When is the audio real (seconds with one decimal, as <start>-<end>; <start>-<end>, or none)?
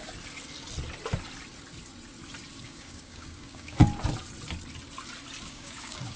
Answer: 0.0-2.6; 3.8-5.4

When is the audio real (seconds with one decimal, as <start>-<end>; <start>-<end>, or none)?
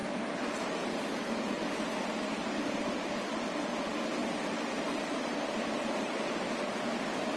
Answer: 0.9-2.4; 3.8-4.2; 6.8-7.4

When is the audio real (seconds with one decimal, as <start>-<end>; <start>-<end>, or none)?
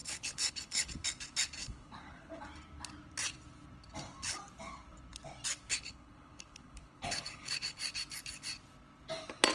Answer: 0.9-1.6; 2.4-5.7; 7.8-9.5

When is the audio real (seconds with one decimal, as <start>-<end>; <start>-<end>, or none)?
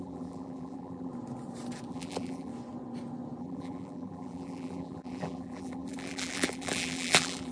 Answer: 1.1-1.9; 2.5-3.4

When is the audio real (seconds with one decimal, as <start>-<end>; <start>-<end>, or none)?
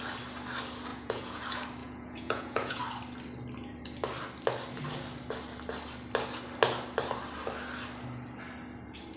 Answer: 0.0-0.9; 1.4-1.8; 2.8-9.2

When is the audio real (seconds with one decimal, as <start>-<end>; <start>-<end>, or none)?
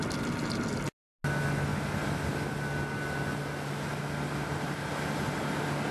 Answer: 0.0-5.9